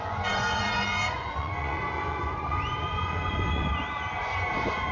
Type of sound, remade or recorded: remade